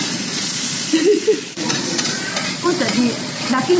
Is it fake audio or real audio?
fake